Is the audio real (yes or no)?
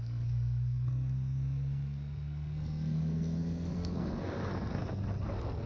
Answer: no